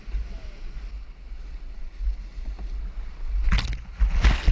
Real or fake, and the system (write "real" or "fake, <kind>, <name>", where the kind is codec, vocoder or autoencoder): real